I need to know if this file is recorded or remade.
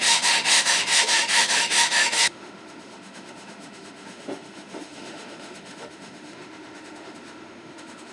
remade